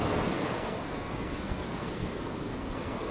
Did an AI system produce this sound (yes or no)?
yes